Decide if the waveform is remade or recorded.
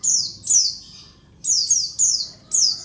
recorded